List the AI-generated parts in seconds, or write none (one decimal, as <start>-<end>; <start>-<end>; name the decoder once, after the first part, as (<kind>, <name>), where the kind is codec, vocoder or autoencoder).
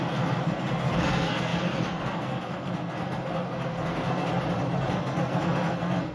0.0-4.3 (codec, SNAC); 4.9-6.1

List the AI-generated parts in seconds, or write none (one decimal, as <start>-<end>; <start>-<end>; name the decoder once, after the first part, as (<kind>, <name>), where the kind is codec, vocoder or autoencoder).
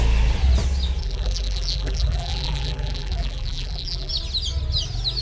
1.0-4.1 (vocoder, BigVGAN v2)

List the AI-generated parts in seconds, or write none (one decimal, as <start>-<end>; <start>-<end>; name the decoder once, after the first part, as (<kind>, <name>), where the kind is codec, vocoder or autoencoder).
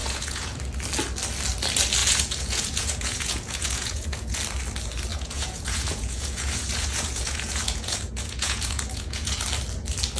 0.0-0.6 (vocoder, Vocos); 2.0-4.4; 5.1-9.4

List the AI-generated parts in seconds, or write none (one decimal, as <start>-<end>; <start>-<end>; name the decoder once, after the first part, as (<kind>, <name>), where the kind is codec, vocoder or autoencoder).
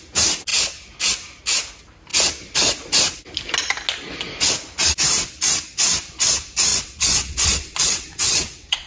6.7-8.9 (vocoder, WaveNeXt)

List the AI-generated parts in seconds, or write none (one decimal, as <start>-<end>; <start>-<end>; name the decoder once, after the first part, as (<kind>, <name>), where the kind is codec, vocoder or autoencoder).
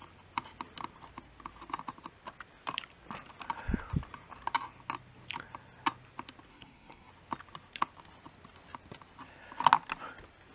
6.5-7.1 (codec, SNAC)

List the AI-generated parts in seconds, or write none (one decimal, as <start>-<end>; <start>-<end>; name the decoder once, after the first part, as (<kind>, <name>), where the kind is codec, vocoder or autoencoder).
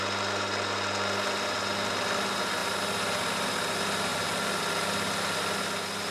4.1-4.6 (vocoder, BigVGAN v2)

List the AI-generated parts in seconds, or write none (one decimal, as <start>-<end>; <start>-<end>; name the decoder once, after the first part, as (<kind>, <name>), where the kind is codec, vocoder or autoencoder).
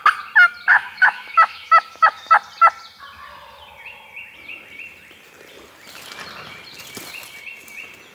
0.7-2.3 (autoencoder, DAC-VAE)